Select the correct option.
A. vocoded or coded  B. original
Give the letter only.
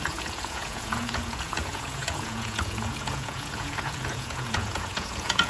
A